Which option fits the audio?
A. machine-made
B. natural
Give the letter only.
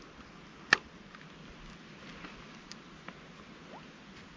B